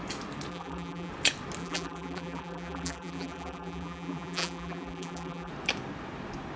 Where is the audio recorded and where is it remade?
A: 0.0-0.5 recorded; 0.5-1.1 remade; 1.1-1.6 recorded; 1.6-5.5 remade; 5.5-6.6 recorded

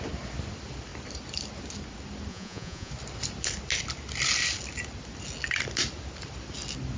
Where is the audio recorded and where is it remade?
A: 0.0-2.3 recorded; 2.3-2.9 remade; 2.9-7.0 recorded

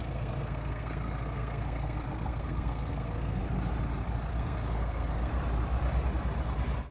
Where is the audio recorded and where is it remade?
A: 0.0-3.4 remade; 3.4-4.3 recorded; 4.3-5.3 remade; 5.3-6.9 recorded

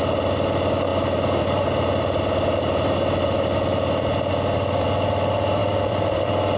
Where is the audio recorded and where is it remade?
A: 0.0-6.6 recorded